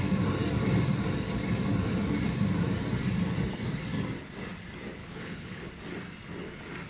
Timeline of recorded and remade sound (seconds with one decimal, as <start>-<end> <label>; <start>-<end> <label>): 0.0-5.0 recorded; 5.0-5.7 remade; 5.7-6.9 recorded